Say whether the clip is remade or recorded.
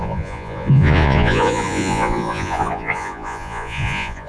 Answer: remade